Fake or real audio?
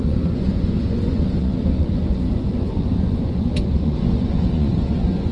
fake